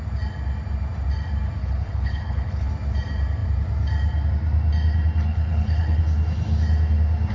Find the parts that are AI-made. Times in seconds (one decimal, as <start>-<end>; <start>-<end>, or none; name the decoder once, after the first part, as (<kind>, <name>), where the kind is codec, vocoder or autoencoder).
1.6-2.7 (codec, HILCodec); 5.3-6.0

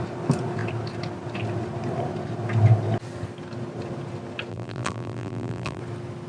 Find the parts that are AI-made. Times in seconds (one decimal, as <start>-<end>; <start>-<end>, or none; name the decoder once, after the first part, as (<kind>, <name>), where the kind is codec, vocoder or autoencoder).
4.5-5.8 (vocoder, BigVGAN v2)

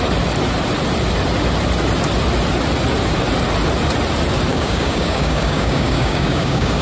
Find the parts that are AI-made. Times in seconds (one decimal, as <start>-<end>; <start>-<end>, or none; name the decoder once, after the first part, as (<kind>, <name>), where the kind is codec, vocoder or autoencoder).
4.5-6.8 (codec, DAC)

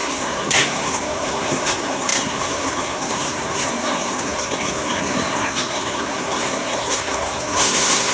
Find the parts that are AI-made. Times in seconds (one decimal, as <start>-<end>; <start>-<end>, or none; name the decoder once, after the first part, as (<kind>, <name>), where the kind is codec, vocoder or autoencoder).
0.0-8.1 (codec, SNAC)

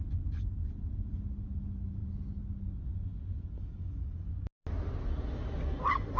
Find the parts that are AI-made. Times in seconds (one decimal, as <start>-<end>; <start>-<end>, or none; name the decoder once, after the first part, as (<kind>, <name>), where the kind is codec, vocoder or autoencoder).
none

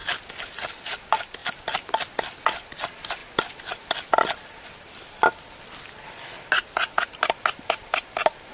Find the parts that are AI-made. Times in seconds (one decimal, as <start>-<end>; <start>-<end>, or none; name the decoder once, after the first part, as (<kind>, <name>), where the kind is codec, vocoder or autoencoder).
none

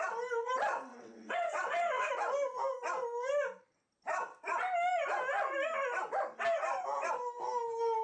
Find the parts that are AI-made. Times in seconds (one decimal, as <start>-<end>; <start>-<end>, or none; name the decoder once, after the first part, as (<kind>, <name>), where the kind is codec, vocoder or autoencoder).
0.9-2.1 (vocoder, WaveNeXt)

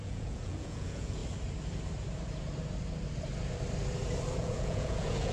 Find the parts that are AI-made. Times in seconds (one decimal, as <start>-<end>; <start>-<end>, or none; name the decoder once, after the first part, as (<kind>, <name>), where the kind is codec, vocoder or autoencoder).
0.0-1.2 (vocoder, Vocos); 4.4-5.3